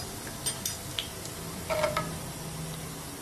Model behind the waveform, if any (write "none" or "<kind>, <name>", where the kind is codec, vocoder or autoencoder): none